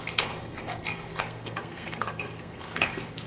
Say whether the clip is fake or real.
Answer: fake